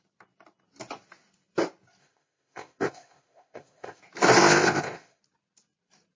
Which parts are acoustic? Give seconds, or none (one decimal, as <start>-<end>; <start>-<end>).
0.0-2.0; 4.0-4.4; 5.2-6.2